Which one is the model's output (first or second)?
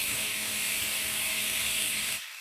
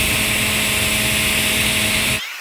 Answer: first